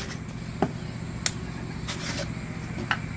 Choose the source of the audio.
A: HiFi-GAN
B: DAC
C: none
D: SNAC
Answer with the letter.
C